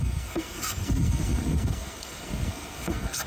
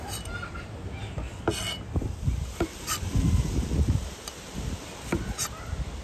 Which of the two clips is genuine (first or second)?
second